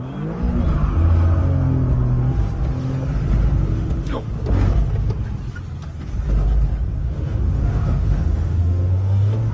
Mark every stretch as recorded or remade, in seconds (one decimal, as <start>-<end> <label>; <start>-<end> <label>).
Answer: 0.0-3.7 recorded; 3.7-4.3 remade; 4.3-7.0 recorded; 7.0-9.5 remade